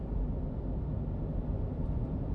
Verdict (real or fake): real